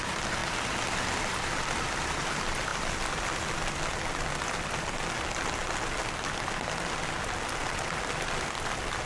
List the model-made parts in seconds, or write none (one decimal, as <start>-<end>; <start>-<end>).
none